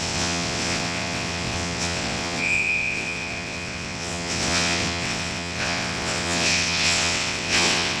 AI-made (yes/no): yes